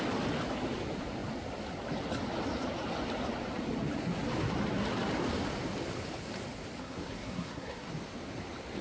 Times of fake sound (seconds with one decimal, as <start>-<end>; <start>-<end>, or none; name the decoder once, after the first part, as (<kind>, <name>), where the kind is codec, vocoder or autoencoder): 6.8-7.9 (codec, SNAC)